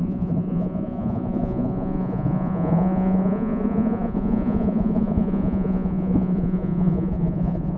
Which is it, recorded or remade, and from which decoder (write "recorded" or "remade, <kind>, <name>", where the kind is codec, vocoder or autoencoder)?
remade, vocoder, Vocos